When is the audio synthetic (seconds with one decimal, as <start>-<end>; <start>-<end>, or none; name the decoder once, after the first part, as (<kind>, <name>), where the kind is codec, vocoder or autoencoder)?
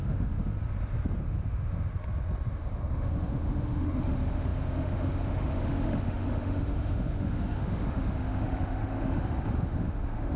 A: 0.0-0.5 (autoencoder, DAC-VAE); 1.2-1.9; 2.5-10.4